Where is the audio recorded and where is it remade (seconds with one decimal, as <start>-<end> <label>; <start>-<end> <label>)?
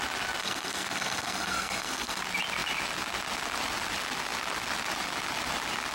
0.0-0.4 recorded; 0.4-2.2 remade; 2.2-5.9 recorded